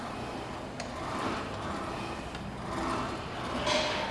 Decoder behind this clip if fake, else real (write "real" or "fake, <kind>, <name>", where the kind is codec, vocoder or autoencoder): real